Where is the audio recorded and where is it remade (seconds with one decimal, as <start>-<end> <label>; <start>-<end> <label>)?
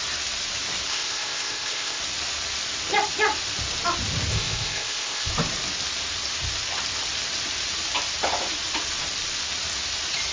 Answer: 0.0-0.9 recorded; 0.9-2.0 remade; 2.0-4.3 recorded; 4.3-5.3 remade; 5.3-10.3 recorded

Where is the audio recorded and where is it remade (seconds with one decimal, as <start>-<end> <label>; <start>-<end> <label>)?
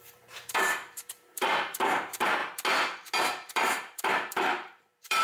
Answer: 0.0-2.4 remade; 2.4-3.2 recorded; 3.2-5.2 remade